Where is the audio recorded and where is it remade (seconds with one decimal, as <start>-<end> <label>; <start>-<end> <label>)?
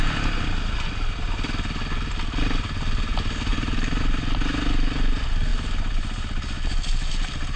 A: 0.0-3.5 recorded; 3.5-4.0 remade; 4.0-7.6 recorded